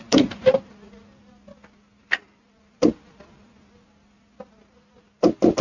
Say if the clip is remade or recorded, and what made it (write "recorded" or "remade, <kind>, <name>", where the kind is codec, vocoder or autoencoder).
recorded